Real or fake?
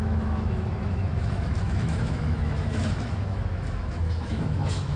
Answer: fake